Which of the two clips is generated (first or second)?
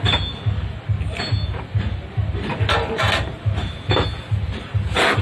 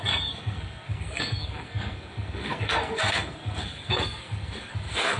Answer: second